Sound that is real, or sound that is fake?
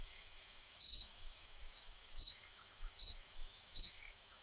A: fake